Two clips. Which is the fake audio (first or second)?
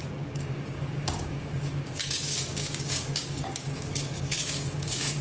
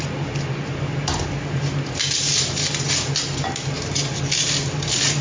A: first